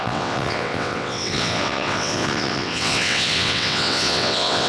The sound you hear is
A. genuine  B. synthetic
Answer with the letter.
B